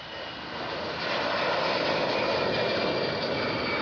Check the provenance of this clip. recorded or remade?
recorded